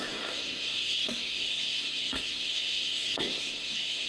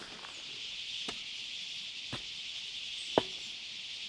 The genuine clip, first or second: second